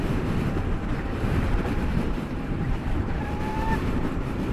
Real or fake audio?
fake